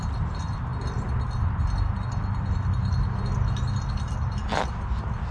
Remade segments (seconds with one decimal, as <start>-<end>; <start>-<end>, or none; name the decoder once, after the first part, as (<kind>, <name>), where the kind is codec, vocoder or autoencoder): none